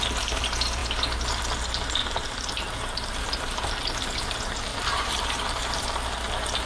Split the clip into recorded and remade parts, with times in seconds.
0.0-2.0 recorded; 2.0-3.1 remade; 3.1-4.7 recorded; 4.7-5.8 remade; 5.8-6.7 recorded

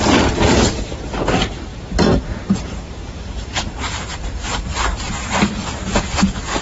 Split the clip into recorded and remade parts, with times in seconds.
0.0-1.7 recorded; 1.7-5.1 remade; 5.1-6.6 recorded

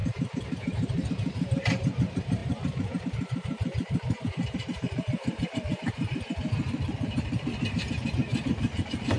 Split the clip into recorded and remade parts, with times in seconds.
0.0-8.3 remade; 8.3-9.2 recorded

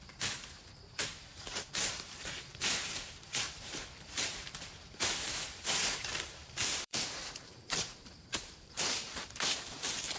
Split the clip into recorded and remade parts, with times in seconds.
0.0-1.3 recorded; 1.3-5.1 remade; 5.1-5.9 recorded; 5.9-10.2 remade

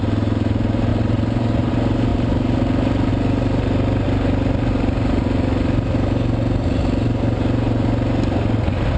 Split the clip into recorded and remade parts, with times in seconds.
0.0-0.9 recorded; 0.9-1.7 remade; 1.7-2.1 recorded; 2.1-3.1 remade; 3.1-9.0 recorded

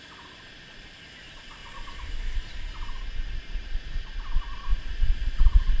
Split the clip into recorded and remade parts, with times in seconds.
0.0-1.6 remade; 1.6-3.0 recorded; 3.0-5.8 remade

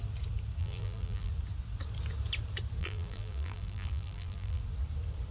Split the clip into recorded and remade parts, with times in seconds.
0.0-0.6 recorded; 0.6-1.3 remade; 1.3-2.8 recorded; 2.8-4.6 remade; 4.6-5.3 recorded

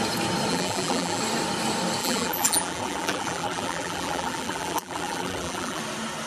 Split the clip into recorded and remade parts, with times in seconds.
0.0-0.5 recorded; 0.5-1.2 remade; 1.2-2.0 recorded; 2.0-5.8 remade; 5.8-6.3 recorded